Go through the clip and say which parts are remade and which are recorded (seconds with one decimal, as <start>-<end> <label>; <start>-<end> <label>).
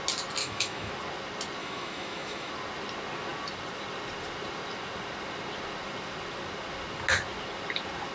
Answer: 0.0-0.4 recorded; 0.4-0.9 remade; 0.9-1.6 recorded; 1.6-2.5 remade; 2.5-8.1 recorded